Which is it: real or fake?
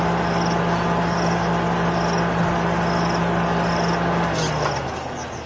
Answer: real